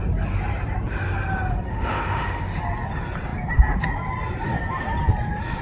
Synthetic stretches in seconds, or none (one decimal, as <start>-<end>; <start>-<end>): 1.7-2.6